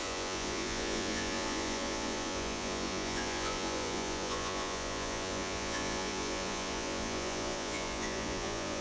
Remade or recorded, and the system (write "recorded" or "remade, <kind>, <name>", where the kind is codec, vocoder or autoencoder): remade, vocoder, Vocos